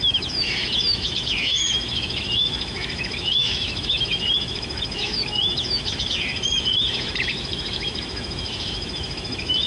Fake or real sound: fake